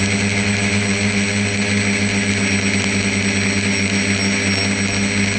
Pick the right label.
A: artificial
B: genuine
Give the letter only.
B